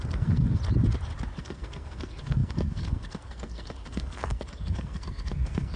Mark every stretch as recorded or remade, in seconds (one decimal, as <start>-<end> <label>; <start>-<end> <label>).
0.0-0.6 remade; 0.6-1.4 recorded; 1.4-5.8 remade